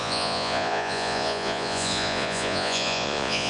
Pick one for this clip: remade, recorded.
remade